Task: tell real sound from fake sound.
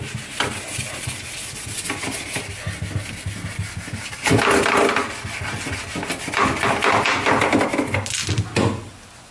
real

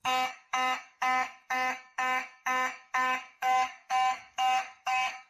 fake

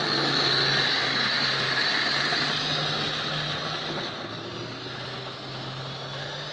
real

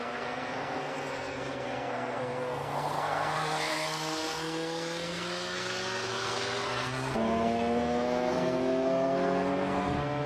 fake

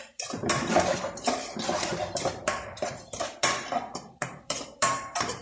fake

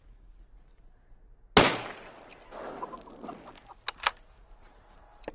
real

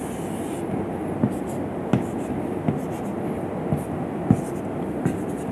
real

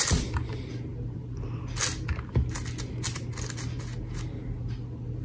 real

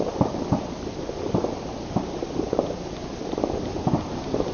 real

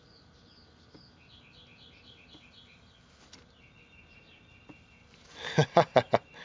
real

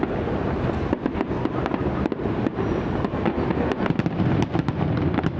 real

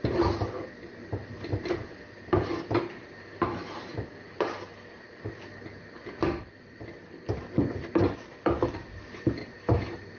real